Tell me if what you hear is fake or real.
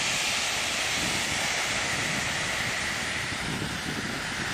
real